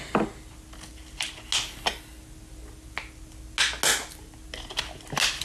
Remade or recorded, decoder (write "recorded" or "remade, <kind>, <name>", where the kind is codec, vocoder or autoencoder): recorded